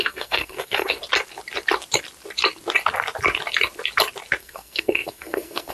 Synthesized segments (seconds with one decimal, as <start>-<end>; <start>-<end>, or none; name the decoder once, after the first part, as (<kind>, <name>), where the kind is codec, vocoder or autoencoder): 0.0-1.0 (codec, SNAC); 4.4-5.7